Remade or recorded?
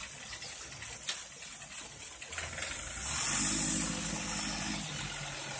recorded